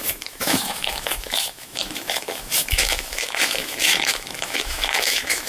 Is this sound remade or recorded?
remade